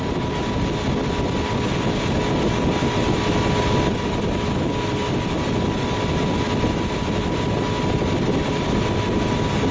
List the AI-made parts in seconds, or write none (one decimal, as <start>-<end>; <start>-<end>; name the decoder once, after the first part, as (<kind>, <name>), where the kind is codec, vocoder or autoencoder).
none